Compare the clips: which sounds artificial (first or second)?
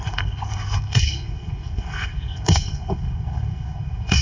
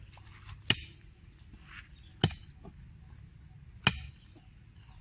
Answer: first